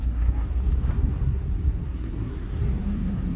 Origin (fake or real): fake